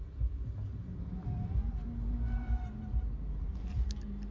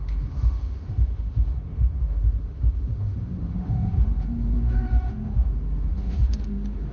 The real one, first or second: first